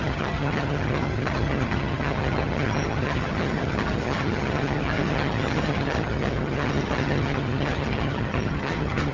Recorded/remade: remade